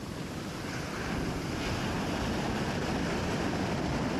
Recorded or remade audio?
recorded